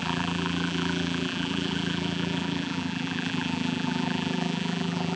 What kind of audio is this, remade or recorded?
remade